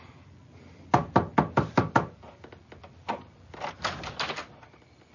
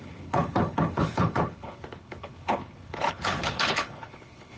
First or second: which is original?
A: first